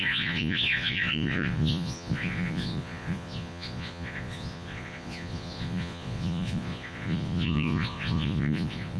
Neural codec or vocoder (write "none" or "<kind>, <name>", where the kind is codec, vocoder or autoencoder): vocoder, Vocos